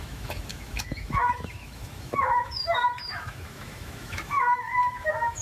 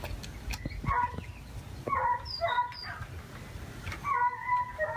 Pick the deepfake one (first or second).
first